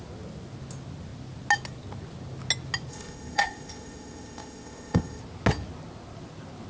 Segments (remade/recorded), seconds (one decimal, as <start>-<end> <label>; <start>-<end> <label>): 0.0-2.9 recorded; 2.9-5.2 remade; 5.2-6.7 recorded